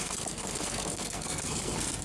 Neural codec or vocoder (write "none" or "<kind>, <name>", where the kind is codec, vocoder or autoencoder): codec, SNAC